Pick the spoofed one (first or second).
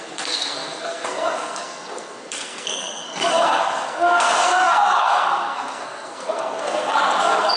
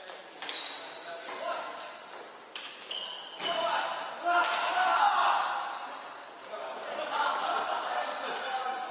first